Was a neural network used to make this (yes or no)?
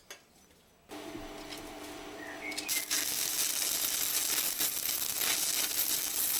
no